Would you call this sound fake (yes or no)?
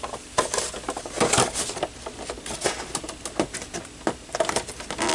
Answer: no